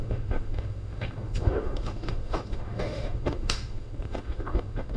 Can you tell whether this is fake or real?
fake